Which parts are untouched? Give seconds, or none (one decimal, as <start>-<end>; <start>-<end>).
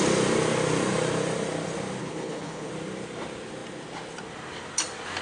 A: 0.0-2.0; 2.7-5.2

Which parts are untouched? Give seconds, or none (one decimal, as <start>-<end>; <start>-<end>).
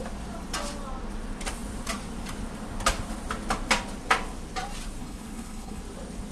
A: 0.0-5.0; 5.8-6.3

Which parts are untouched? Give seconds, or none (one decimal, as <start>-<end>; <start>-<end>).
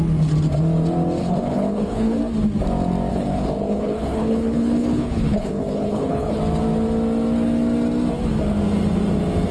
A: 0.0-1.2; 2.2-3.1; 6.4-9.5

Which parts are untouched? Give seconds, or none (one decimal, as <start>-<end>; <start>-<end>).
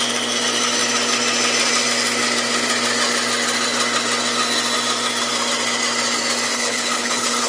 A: 0.0-6.5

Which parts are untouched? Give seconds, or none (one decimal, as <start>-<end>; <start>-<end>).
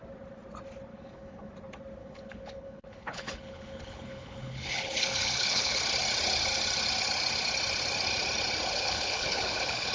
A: 0.0-0.9; 1.5-2.0; 5.8-8.7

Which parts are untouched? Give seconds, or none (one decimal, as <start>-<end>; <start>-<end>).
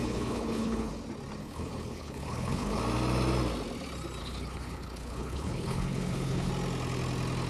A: 0.9-1.4; 2.8-4.2; 6.5-7.5